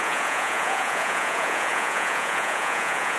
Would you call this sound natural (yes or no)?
no